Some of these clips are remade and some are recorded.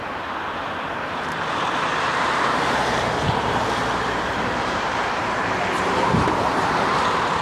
remade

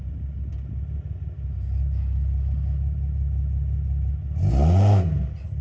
recorded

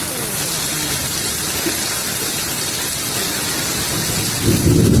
recorded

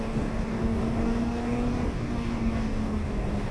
remade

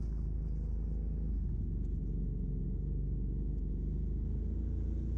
recorded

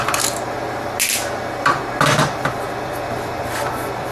recorded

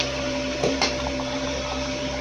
remade